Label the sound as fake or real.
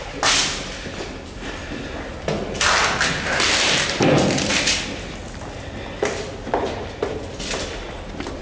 real